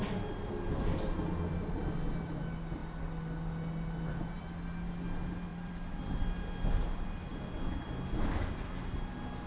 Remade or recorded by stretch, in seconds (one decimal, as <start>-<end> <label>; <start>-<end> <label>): 0.0-5.5 recorded; 5.5-6.0 remade; 6.0-9.5 recorded

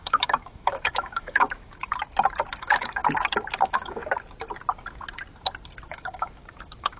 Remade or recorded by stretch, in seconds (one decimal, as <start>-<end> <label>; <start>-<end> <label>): 0.0-1.9 remade; 1.9-2.6 recorded; 2.6-3.0 remade; 3.0-3.6 recorded; 3.6-4.0 remade; 4.0-5.9 recorded; 5.9-7.0 remade

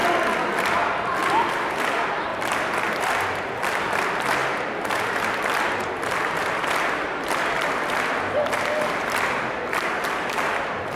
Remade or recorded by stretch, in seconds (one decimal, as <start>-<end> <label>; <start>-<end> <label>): 0.0-1.5 recorded; 1.5-11.0 remade

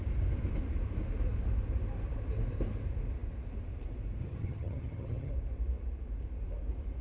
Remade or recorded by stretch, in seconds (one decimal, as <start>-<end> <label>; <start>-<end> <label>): 0.0-4.2 recorded; 4.2-5.3 remade; 5.3-7.0 recorded

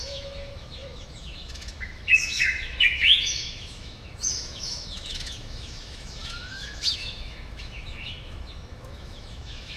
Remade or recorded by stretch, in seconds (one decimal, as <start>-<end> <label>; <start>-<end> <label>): 0.0-9.8 remade

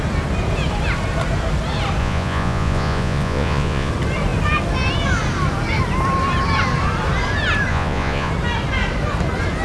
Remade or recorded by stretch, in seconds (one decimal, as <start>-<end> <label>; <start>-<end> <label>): 0.0-2.0 recorded; 2.0-3.9 remade; 3.9-7.7 recorded; 7.7-8.3 remade; 8.3-9.6 recorded

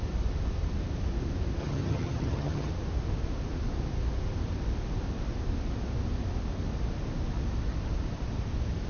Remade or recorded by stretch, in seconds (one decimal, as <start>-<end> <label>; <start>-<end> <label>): 0.0-1.6 recorded; 1.6-2.7 remade; 2.7-8.9 recorded

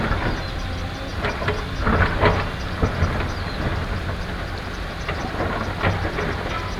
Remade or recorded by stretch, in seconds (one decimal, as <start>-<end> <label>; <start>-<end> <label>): 0.0-6.8 recorded